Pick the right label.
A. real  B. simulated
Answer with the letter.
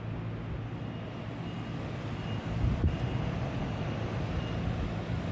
A